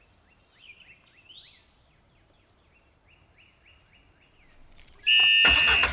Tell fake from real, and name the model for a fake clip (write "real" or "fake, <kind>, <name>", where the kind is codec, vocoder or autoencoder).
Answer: real